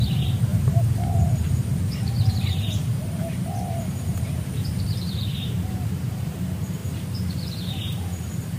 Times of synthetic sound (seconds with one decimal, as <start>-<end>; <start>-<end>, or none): 0.0-8.6